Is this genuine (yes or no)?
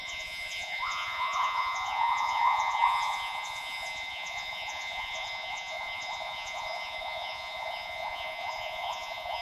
no